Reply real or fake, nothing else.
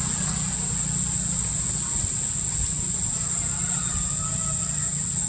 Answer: real